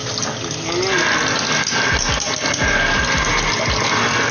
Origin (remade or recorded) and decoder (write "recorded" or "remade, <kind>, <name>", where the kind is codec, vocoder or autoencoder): recorded